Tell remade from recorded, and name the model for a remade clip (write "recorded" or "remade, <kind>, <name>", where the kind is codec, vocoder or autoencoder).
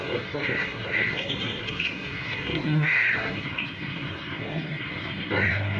remade, codec, SNAC